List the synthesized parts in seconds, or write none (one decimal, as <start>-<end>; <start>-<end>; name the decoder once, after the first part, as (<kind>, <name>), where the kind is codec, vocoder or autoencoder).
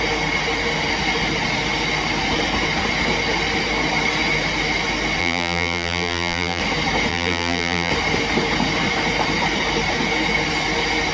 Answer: 5.2-6.6 (vocoder, BigVGAN v2); 7.1-7.9